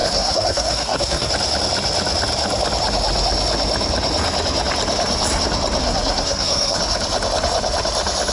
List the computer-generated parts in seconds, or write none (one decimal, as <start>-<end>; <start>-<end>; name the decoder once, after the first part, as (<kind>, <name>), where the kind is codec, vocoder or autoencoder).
0.0-1.3 (codec, SNAC); 5.8-6.8